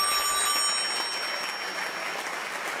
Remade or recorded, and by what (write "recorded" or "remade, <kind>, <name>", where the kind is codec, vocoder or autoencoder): recorded